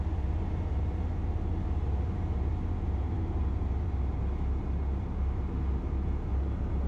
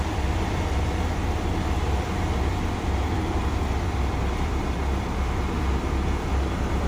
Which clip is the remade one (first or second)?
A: second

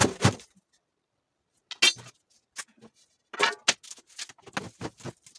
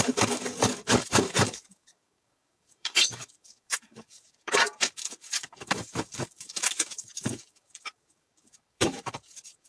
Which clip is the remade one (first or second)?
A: second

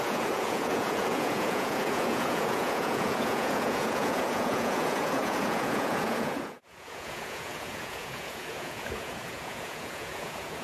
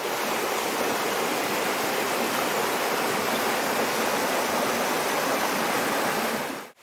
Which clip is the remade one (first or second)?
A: first